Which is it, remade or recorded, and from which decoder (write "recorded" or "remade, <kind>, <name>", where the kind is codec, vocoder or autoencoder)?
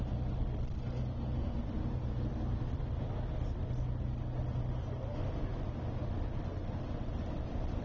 recorded